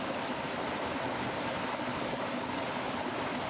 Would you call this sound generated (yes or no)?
no